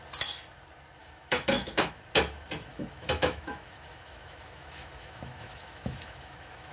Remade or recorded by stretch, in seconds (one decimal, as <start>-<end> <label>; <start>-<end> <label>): 0.0-1.0 recorded; 1.0-1.9 remade; 1.9-2.7 recorded; 2.7-6.7 remade